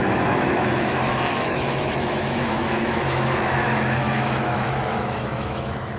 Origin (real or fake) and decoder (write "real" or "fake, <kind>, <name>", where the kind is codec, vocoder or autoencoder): fake, autoencoder, DAC-VAE